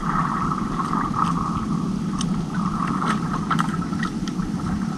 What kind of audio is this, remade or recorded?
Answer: recorded